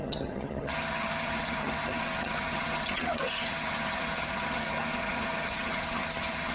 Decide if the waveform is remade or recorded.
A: remade